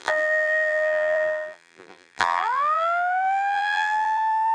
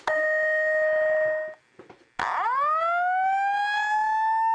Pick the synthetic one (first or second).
first